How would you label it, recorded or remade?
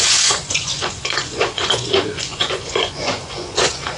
remade